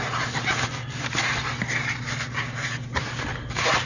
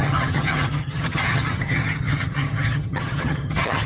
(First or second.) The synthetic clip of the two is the second